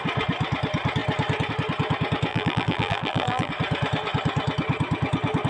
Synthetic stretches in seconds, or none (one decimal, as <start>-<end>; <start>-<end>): 2.3-3.5